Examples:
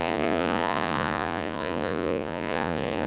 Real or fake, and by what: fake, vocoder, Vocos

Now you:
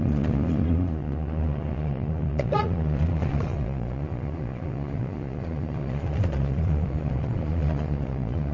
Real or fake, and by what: fake, vocoder, Vocos